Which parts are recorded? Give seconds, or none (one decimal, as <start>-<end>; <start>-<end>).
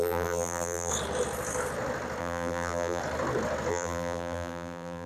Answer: 0.9-2.2; 3.0-3.7